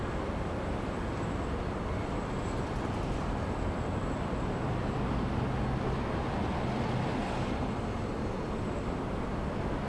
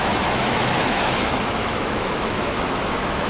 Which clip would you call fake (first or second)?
second